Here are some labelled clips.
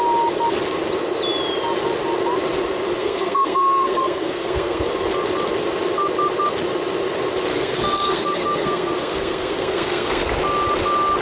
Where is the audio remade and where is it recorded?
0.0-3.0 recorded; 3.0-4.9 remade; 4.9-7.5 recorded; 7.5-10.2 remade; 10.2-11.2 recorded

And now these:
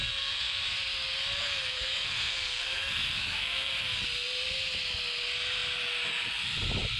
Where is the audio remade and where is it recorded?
0.0-0.6 remade; 0.6-1.4 recorded; 1.4-3.7 remade; 3.7-7.0 recorded

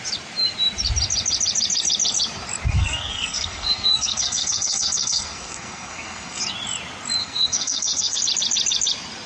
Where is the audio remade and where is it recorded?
0.0-2.7 recorded; 2.7-6.4 remade; 6.4-7.2 recorded; 7.2-8.2 remade; 8.2-9.3 recorded

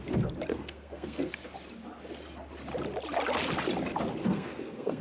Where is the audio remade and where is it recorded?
0.0-0.5 recorded; 0.5-1.3 remade; 1.3-4.2 recorded; 4.2-5.0 remade